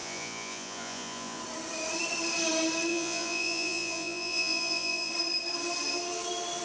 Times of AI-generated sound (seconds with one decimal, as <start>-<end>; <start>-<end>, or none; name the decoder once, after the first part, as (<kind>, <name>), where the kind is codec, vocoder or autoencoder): 0.0-1.4 (vocoder, Vocos); 2.9-5.1